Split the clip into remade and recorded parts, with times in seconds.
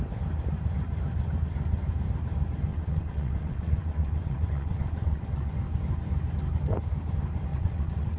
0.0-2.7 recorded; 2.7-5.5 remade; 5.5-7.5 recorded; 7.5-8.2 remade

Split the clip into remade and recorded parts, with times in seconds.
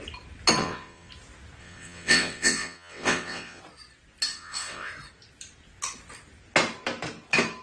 0.0-0.6 recorded; 0.6-1.1 remade; 1.1-1.6 recorded; 1.6-3.6 remade; 3.6-4.3 recorded; 4.3-4.9 remade; 4.9-7.6 recorded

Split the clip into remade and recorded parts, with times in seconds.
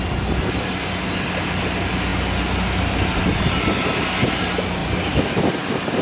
0.0-6.0 recorded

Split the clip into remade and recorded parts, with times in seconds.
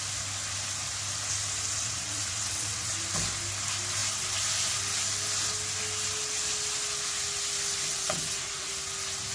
0.0-1.8 recorded; 1.8-2.9 remade; 2.9-7.9 recorded; 7.9-8.7 remade; 8.7-9.3 recorded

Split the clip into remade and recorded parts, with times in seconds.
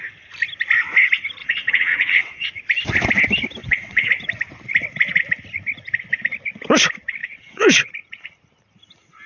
0.0-1.4 recorded; 1.4-2.5 remade; 2.5-3.6 recorded; 3.6-4.1 remade; 4.1-7.2 recorded; 7.2-7.9 remade; 7.9-9.3 recorded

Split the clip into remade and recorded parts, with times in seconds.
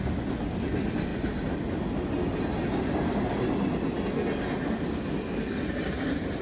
0.0-6.4 recorded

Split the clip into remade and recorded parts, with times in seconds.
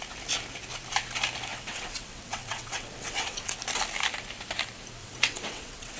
0.0-1.5 recorded; 1.5-3.5 remade; 3.5-5.0 recorded; 5.0-6.0 remade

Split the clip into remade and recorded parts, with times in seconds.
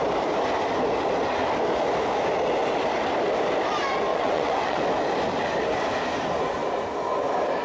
0.0-4.1 recorded; 4.1-4.8 remade; 4.8-7.6 recorded